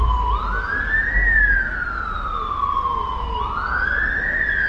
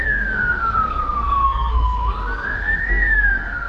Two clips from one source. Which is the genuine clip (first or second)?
first